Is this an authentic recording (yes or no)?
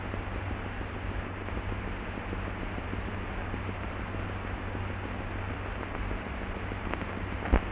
yes